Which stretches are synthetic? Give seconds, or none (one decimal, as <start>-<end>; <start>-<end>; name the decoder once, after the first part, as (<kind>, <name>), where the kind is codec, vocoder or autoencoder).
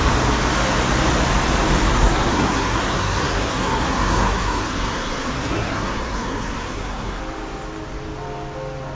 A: 1.9-7.2 (codec, SNAC)